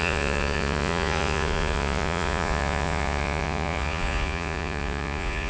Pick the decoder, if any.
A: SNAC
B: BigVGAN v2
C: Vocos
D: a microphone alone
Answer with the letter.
C